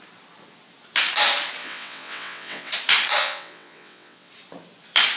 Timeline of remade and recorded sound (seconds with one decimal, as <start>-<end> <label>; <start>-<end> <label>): 0.0-1.6 recorded; 1.6-2.7 remade; 2.7-3.2 recorded; 3.2-4.3 remade; 4.3-5.2 recorded